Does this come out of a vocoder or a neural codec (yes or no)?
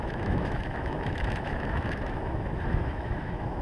yes